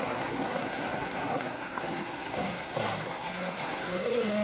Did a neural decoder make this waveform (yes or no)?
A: yes